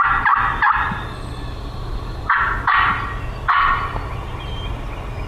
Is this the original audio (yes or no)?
yes